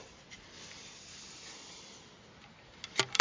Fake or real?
real